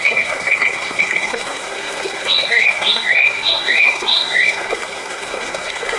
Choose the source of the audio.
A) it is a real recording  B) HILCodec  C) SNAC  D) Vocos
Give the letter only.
C